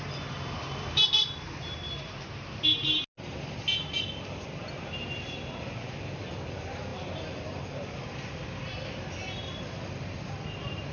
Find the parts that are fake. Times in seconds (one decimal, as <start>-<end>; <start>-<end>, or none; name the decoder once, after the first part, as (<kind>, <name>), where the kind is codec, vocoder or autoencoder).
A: none